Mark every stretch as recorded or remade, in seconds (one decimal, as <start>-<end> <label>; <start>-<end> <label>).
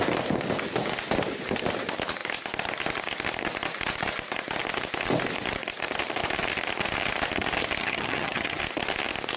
0.0-7.8 recorded; 7.8-8.6 remade; 8.6-9.4 recorded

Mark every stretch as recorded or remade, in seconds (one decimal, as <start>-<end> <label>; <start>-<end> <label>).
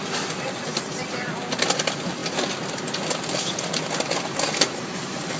0.0-5.4 recorded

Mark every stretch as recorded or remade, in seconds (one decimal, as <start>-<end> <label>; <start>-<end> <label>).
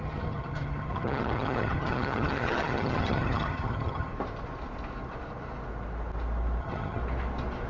0.0-4.1 remade; 4.1-6.6 recorded; 6.6-7.0 remade; 7.0-7.7 recorded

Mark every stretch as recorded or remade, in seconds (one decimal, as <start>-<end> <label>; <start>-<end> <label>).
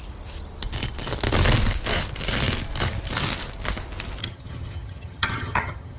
0.0-4.2 recorded; 4.2-6.0 remade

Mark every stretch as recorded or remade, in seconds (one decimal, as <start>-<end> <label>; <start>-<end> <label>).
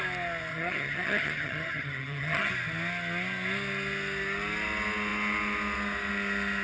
0.0-0.5 recorded; 0.5-2.5 remade; 2.5-6.6 recorded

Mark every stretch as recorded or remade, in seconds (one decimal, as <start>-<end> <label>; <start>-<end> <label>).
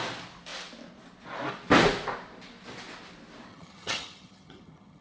0.0-3.5 recorded; 3.5-5.0 remade